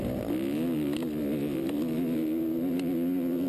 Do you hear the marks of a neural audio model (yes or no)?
no